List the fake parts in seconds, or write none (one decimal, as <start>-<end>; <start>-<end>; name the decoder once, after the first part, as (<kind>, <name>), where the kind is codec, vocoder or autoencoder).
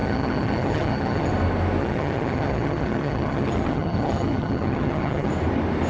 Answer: 0.0-1.3 (vocoder, HiFi-GAN); 1.8-5.3